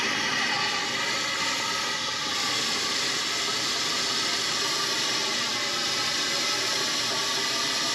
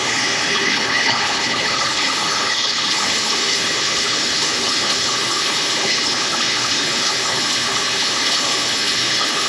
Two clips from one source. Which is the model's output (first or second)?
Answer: second